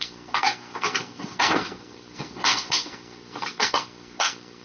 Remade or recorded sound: remade